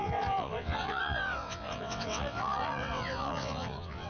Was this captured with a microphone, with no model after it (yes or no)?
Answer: no